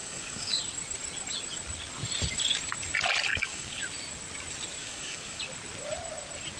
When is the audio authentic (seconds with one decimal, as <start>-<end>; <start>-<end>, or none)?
0.6-3.3; 3.8-4.8; 5.4-6.6